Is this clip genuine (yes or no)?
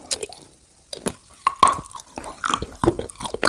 yes